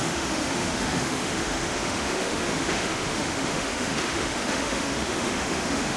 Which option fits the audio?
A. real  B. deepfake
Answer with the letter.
B